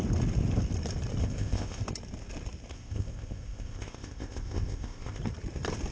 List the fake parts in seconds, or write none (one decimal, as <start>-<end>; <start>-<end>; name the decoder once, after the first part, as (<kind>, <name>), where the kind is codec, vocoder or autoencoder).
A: 1.2-1.8 (codec, ZipCodec); 2.7-5.2